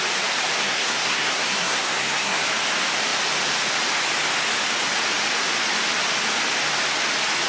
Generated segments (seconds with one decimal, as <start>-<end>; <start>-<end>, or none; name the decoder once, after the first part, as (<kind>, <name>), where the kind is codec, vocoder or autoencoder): 0.6-2.4 (codec, SNAC)